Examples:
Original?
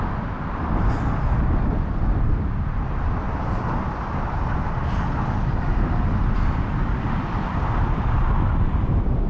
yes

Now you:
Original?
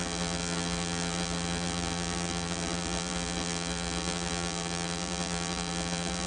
no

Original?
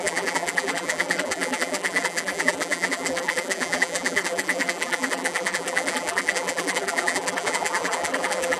no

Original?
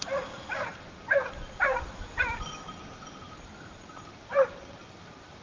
no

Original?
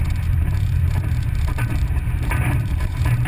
no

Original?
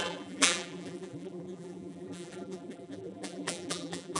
no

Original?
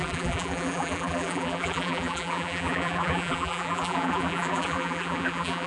no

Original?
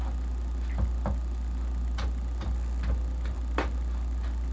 yes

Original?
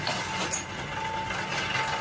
yes